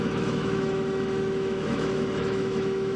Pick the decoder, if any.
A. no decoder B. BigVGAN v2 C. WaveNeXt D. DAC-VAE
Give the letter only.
D